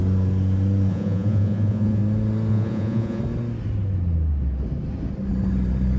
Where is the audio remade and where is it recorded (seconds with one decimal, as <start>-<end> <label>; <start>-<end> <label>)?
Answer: 0.0-0.9 recorded; 0.9-2.0 remade; 2.0-2.5 recorded; 2.5-3.2 remade; 3.2-6.0 recorded